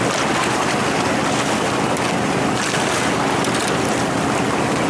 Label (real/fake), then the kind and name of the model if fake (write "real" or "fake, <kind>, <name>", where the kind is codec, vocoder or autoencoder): real